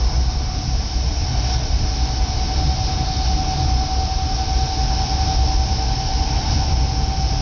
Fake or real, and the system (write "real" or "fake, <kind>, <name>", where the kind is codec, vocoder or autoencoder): real